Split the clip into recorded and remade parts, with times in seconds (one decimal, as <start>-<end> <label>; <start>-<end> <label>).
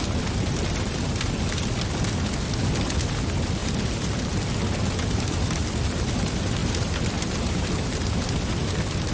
0.0-3.6 recorded; 3.6-4.3 remade; 4.3-6.6 recorded; 6.6-8.3 remade; 8.3-9.1 recorded